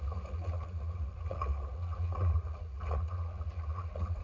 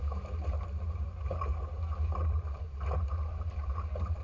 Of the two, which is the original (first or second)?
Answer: second